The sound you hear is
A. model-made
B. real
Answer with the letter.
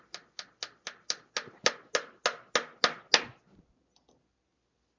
B